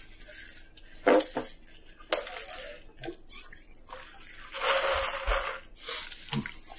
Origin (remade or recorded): recorded